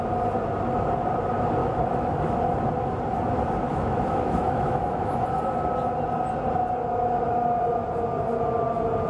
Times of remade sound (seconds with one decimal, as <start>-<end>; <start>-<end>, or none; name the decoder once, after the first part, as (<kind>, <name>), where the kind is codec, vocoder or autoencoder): 1.6-2.4 (autoencoder, DAC-VAE); 3.7-5.1